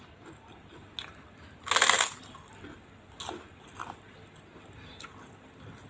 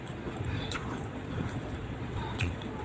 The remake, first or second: second